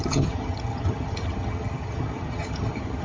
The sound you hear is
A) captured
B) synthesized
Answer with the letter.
B